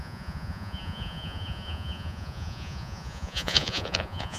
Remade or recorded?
remade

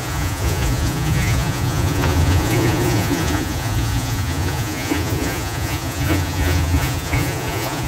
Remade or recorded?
remade